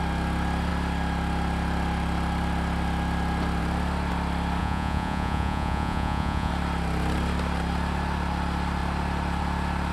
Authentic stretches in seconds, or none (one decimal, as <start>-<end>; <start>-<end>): 0.0-4.6; 6.5-9.9